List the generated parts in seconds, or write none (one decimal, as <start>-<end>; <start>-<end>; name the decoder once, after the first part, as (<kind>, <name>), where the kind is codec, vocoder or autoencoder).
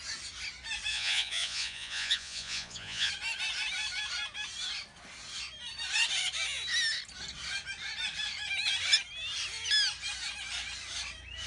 0.9-3.1 (vocoder, Vocos)